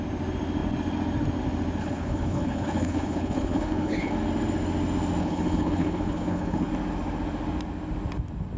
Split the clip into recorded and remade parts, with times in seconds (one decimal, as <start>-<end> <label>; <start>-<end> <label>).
0.0-1.8 recorded; 1.8-4.1 remade; 4.1-5.2 recorded; 5.2-6.7 remade; 6.7-8.6 recorded